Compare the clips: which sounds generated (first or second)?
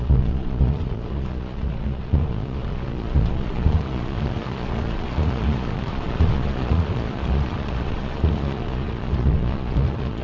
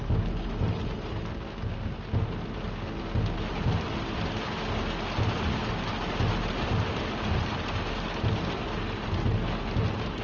first